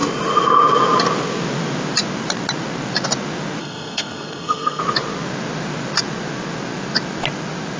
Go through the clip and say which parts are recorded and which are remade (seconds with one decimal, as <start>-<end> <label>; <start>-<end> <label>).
0.0-3.6 recorded; 3.6-4.8 remade; 4.8-7.8 recorded